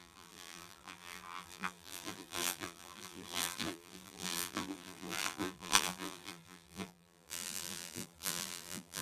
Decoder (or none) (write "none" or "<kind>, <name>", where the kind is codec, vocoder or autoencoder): vocoder, BigVGAN v2